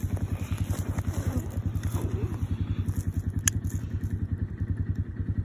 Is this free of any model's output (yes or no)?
yes